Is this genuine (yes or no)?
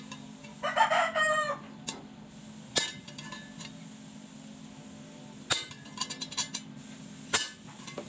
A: yes